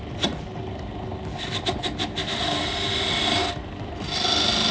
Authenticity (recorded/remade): recorded